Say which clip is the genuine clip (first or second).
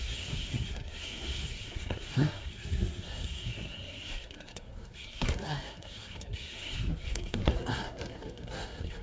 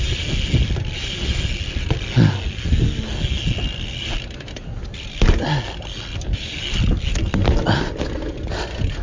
second